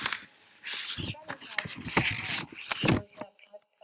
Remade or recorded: recorded